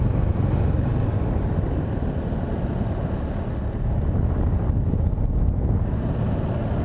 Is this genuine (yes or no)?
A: yes